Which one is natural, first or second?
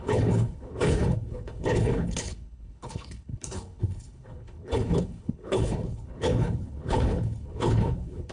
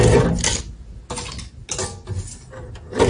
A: second